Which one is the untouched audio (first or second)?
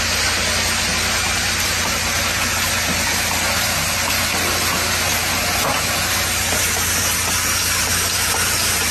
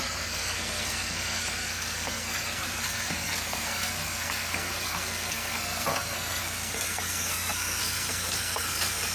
first